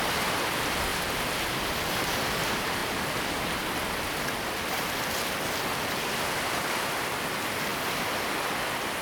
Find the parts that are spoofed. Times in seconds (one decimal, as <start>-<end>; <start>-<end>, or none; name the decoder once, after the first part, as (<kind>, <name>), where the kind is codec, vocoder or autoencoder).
0.0-7.7 (vocoder, BigVGAN v2); 8.4-9.0